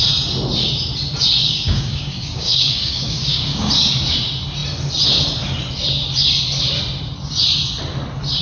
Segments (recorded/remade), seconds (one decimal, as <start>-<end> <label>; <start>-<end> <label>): 0.0-1.4 recorded; 1.4-3.7 remade; 3.7-8.4 recorded